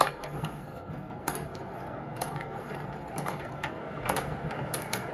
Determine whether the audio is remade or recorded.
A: remade